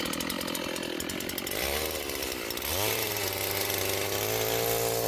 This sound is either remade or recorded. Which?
recorded